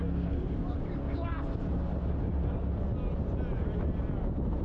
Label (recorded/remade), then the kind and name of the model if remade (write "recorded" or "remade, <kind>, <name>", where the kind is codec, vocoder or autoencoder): recorded